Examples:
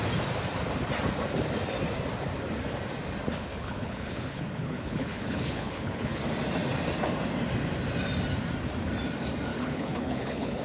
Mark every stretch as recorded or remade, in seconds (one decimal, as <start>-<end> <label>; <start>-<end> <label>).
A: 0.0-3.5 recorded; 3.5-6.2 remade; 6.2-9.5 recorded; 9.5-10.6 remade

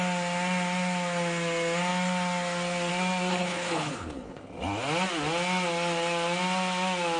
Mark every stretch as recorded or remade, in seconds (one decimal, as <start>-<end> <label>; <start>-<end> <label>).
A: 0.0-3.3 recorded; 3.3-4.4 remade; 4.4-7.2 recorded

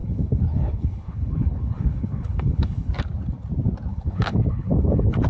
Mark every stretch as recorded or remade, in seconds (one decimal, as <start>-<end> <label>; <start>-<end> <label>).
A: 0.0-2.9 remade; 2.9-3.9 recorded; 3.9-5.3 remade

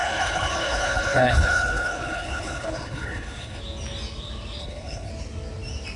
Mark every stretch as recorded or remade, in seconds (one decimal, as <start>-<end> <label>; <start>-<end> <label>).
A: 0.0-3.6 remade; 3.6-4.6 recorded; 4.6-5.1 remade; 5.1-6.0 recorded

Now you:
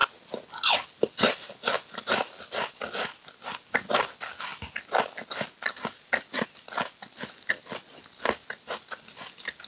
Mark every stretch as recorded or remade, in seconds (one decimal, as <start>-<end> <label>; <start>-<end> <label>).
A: 0.0-9.7 recorded

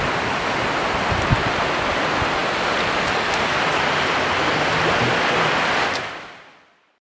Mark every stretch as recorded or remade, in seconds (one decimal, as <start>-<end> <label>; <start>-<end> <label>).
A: 0.0-7.0 recorded

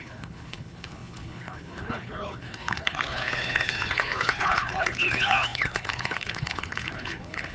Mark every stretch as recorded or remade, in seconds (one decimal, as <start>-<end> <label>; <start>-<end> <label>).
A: 0.0-7.5 remade